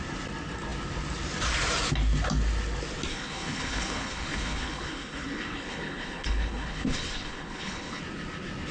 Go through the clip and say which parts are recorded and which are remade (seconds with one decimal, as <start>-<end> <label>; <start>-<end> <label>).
0.0-3.1 recorded; 3.1-8.0 remade; 8.0-8.7 recorded

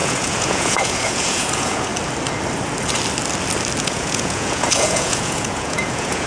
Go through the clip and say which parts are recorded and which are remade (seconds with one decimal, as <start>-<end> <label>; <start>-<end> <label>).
0.0-1.9 remade; 1.9-3.8 recorded; 3.8-6.3 remade

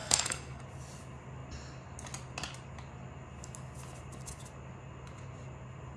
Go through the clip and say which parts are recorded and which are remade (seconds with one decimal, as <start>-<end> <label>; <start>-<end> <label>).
0.0-0.6 remade; 0.6-6.0 recorded

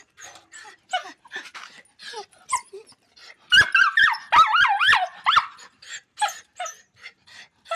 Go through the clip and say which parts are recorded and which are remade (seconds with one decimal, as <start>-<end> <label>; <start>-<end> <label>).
0.0-1.5 remade; 1.5-4.6 recorded; 4.6-5.1 remade; 5.1-5.7 recorded; 5.7-7.8 remade

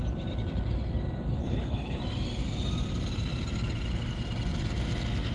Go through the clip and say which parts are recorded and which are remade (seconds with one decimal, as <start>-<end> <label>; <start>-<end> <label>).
0.0-1.4 recorded; 1.4-2.0 remade; 2.0-5.3 recorded

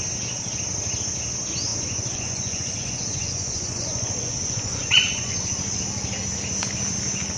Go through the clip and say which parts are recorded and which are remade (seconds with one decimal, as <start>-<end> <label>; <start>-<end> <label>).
0.0-1.7 recorded; 1.7-5.8 remade; 5.8-7.4 recorded

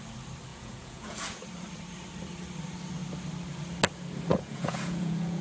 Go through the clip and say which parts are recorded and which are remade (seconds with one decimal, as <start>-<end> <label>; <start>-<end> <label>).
0.0-0.5 recorded; 0.5-1.4 remade; 1.4-4.3 recorded; 4.3-5.4 remade